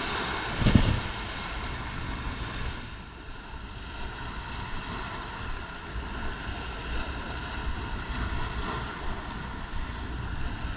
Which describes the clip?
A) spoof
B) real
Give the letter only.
B